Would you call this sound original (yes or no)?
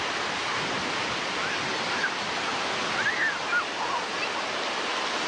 yes